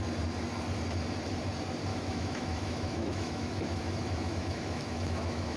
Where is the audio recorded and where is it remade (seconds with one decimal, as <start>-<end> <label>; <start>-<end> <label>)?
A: 0.0-1.9 recorded; 1.9-5.6 remade